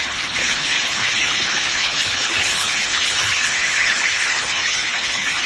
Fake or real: fake